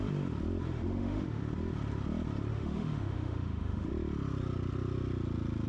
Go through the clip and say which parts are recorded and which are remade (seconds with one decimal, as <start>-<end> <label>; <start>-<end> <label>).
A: 0.0-0.7 recorded; 0.7-1.4 remade; 1.4-2.5 recorded; 2.5-3.9 remade; 3.9-5.7 recorded